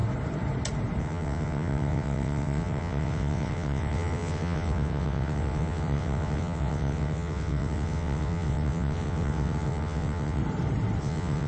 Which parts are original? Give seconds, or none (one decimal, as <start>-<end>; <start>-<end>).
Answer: 0.0-1.0; 10.4-11.0